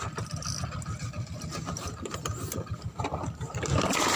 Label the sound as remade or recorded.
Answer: recorded